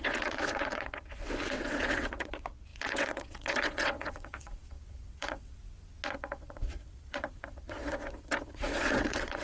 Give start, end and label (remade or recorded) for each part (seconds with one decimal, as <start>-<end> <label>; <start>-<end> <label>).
0.0-5.6 remade; 5.6-6.1 recorded; 6.1-9.4 remade